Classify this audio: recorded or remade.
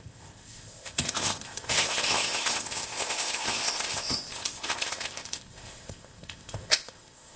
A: remade